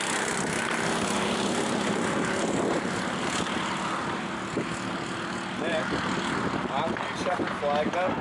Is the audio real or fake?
real